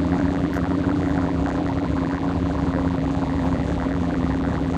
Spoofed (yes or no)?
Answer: yes